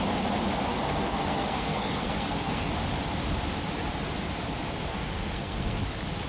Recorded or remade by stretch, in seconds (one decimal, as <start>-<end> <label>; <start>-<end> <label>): 0.0-0.7 recorded; 0.7-2.7 remade; 2.7-4.9 recorded; 4.9-5.8 remade; 5.8-6.3 recorded